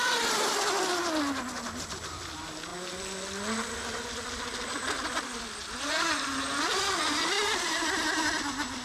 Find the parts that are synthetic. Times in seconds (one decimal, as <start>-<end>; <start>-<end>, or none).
none